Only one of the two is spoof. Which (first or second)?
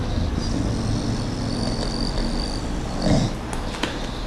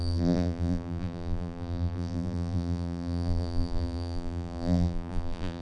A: second